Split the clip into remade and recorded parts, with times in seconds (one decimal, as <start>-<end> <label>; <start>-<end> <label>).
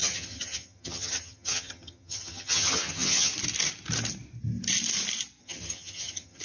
0.0-3.3 remade; 3.3-5.4 recorded; 5.4-6.4 remade